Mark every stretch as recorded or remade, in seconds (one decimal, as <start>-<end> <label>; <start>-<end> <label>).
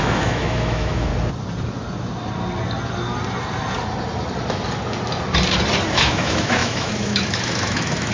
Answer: 0.0-1.1 remade; 1.1-5.9 recorded; 5.9-8.1 remade